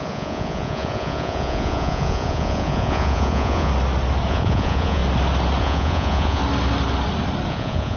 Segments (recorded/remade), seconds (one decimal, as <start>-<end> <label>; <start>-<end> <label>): 0.0-3.7 remade; 3.7-4.3 recorded; 4.3-5.0 remade; 5.0-5.6 recorded; 5.6-6.4 remade; 6.4-7.5 recorded; 7.5-8.0 remade

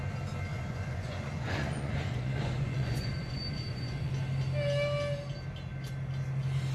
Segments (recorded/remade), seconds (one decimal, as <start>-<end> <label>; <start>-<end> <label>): 0.0-0.5 recorded; 0.5-4.1 remade; 4.1-6.7 recorded